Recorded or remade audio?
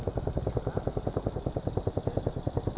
recorded